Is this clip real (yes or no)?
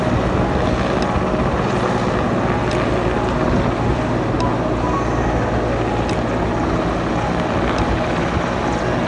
yes